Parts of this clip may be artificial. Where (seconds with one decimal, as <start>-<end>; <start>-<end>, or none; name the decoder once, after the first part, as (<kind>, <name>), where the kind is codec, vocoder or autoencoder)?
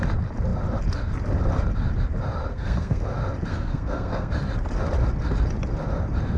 2.5-3.0 (codec, SNAC); 3.5-4.3